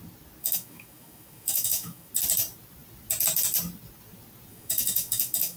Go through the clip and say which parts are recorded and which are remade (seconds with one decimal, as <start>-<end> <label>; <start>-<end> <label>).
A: 0.0-0.4 recorded; 0.4-2.1 remade; 2.1-4.5 recorded; 4.5-5.6 remade

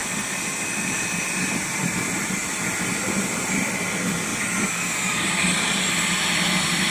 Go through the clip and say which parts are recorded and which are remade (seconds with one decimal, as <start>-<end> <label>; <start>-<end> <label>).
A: 0.0-6.9 remade

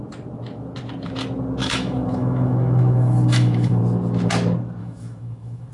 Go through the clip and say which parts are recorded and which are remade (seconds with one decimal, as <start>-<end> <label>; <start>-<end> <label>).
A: 0.0-1.6 recorded; 1.6-3.8 remade; 3.8-4.8 recorded; 4.8-5.7 remade

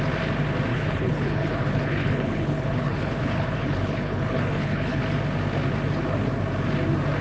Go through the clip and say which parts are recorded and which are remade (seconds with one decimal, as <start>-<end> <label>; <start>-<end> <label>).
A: 0.0-0.7 recorded; 0.7-5.0 remade; 5.0-7.2 recorded

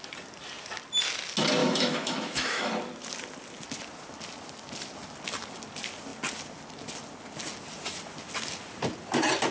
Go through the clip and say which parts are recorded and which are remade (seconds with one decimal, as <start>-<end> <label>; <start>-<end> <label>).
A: 0.0-1.6 recorded; 1.6-2.7 remade; 2.7-9.5 recorded

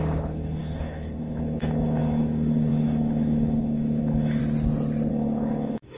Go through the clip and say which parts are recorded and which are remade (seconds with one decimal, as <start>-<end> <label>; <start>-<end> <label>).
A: 0.0-4.4 remade; 4.4-5.1 recorded; 5.1-6.0 remade

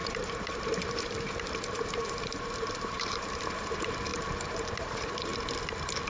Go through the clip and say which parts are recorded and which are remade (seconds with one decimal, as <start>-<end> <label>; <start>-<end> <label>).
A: 0.0-5.3 remade; 5.3-6.1 recorded